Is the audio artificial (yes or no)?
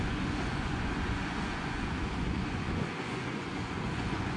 yes